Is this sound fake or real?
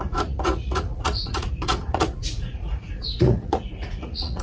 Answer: fake